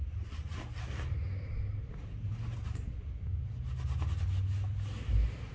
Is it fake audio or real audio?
real